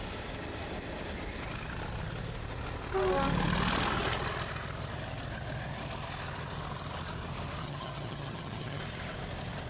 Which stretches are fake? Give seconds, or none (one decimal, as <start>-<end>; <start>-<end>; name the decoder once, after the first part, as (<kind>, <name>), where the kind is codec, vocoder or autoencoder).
7.6-8.8 (vocoder, HiFi-GAN)